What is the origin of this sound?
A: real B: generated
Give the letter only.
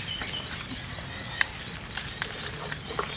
A